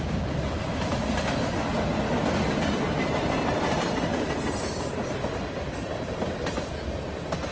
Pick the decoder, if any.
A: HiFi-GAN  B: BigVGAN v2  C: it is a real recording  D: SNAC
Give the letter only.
C